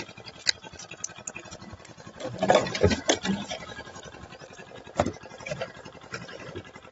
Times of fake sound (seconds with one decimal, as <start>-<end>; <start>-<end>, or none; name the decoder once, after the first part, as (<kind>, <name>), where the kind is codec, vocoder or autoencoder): 0.0-0.4 (vocoder, BigVGAN v2); 1.5-6.9

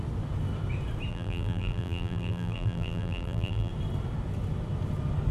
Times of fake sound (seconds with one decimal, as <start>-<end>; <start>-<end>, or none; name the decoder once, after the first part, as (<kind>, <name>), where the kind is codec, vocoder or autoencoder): 1.1-3.7 (vocoder, BigVGAN v2)

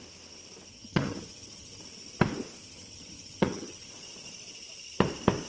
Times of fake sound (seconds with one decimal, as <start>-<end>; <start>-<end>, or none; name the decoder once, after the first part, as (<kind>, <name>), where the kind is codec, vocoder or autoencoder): 0.7-1.8 (vocoder, HiFi-GAN); 2.6-3.9

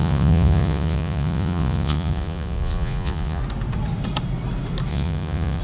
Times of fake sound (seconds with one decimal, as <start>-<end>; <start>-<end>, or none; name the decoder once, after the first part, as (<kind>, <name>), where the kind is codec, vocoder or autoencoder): 0.0-3.4 (vocoder, Vocos); 4.9-5.6

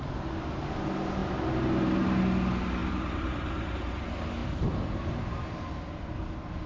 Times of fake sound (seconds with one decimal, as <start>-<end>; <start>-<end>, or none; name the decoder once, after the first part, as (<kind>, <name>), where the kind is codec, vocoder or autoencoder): 2.8-4.0 (vocoder, BigVGAN v2); 4.4-5.5

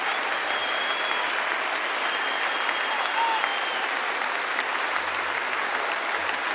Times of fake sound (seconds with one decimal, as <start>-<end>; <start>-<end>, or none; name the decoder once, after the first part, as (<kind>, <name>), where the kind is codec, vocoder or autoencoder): none

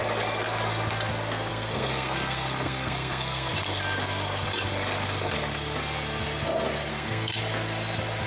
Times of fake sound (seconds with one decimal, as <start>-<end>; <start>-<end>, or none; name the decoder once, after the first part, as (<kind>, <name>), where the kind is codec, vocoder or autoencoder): 1.5-3.5 (codec, SNAC); 6.9-7.4

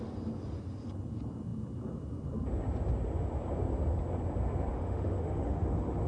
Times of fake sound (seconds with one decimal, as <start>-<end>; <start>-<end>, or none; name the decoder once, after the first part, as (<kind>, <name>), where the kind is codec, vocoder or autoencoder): 4.7-6.1 (autoencoder, DAC-VAE)